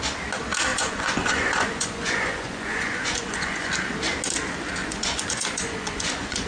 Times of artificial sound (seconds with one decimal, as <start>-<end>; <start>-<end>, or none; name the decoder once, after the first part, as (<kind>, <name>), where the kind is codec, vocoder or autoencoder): 0.7-3.7 (vocoder, Vocos); 4.8-6.5